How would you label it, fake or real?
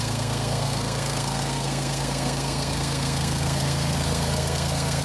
fake